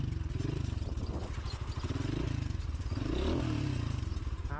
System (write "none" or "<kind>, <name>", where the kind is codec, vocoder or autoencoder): none